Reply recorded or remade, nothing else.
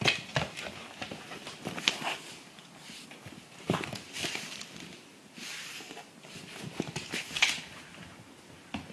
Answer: recorded